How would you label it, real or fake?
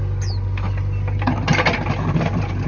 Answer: real